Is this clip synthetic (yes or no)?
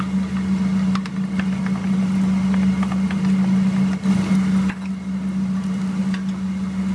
no